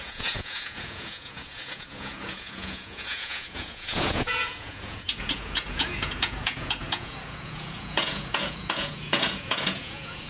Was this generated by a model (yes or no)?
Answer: yes